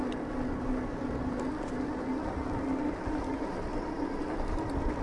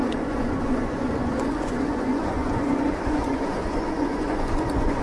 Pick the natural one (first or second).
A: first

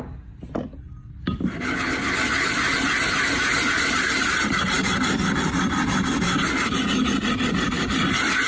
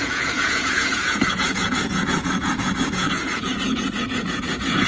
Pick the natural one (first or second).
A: first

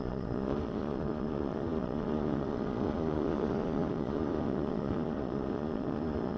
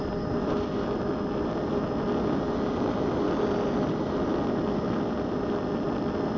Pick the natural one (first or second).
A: second